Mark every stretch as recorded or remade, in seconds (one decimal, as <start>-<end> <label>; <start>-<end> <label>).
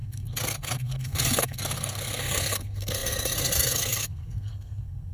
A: 0.0-5.1 remade